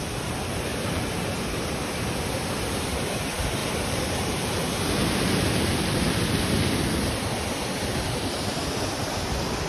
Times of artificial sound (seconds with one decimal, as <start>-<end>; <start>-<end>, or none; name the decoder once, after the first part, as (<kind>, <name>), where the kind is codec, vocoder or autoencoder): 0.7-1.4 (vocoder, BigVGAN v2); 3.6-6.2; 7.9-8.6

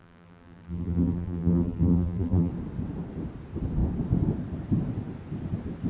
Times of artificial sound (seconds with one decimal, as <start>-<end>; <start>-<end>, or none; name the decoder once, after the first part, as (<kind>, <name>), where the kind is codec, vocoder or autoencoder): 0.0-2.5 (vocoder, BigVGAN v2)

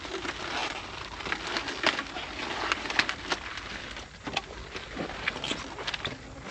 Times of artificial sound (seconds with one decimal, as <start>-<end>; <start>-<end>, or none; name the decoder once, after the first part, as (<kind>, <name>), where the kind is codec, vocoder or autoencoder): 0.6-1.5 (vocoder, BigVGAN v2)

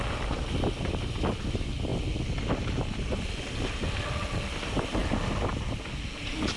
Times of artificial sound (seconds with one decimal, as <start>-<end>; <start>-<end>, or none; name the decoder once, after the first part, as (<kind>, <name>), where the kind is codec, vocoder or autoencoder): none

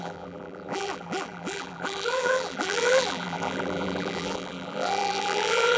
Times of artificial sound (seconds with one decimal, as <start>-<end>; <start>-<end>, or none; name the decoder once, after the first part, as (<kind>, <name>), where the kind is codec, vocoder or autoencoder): 0.0-5.8 (vocoder, BigVGAN v2)

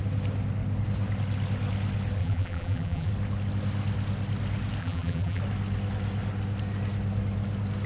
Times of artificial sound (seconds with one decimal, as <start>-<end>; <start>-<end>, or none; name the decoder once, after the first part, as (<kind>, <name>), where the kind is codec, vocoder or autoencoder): 2.2-3.1 (vocoder, BigVGAN v2); 4.8-5.4

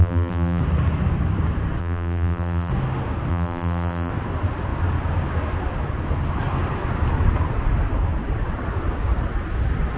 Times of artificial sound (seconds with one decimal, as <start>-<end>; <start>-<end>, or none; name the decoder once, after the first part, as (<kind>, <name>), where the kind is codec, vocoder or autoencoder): 0.0-0.6 (vocoder, BigVGAN v2); 1.8-2.7; 3.3-4.1

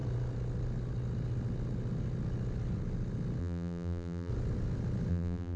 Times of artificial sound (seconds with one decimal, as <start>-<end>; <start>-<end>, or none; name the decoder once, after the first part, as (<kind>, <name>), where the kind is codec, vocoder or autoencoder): 3.4-4.3 (vocoder, BigVGAN v2); 5.1-5.6